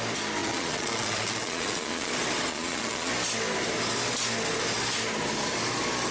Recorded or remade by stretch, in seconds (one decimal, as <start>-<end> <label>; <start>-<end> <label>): 0.0-0.4 recorded; 0.4-2.1 remade; 2.1-2.5 recorded; 2.5-3.1 remade; 3.1-6.1 recorded